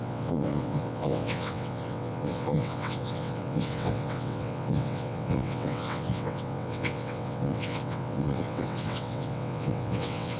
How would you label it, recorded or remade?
remade